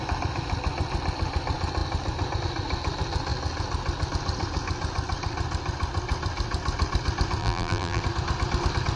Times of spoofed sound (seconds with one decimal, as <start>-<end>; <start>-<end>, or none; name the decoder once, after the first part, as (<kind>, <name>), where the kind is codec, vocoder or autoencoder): 7.4-8.0 (vocoder, BigVGAN v2)